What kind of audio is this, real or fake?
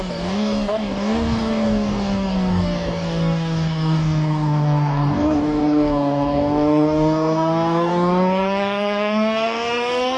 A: fake